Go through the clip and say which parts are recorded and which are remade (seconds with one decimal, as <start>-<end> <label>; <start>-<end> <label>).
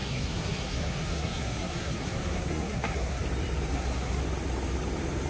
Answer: 0.0-3.2 remade; 3.2-3.7 recorded; 3.7-4.2 remade; 4.2-5.3 recorded